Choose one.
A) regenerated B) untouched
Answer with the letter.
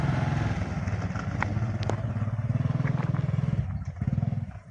B